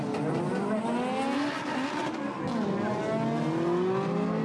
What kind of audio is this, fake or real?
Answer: real